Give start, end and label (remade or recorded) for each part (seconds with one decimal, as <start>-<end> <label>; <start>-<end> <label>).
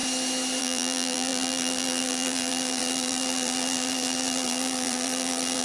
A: 0.0-0.6 recorded; 0.6-5.6 remade